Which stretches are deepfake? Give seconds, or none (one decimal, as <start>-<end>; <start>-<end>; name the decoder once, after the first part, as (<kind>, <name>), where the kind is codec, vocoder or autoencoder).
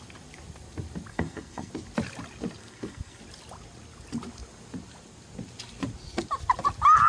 1.1-1.7 (codec, SNAC); 2.6-3.2